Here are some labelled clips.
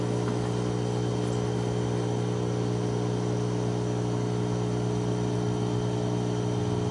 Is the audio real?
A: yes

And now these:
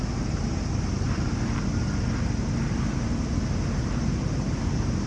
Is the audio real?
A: yes